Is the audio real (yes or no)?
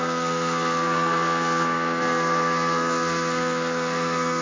no